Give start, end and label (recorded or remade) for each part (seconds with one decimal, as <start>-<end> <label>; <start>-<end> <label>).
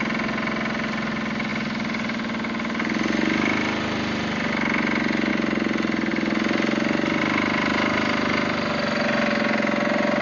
0.0-10.2 recorded